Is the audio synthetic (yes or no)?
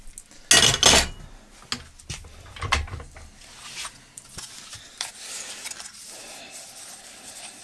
no